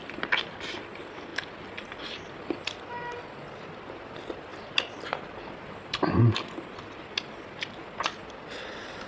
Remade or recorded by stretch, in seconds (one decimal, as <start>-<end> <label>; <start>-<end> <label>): 0.0-9.1 recorded